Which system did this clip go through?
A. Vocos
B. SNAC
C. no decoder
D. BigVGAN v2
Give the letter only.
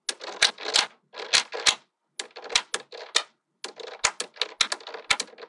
C